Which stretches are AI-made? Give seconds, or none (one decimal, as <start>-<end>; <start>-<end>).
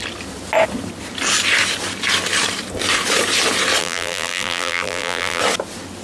3.8-5.4